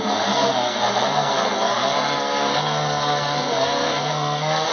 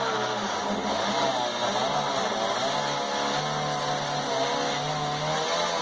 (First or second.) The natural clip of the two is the second